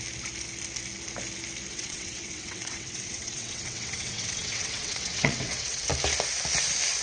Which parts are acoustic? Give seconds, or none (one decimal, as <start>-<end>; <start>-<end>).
0.0-1.7; 5.9-7.0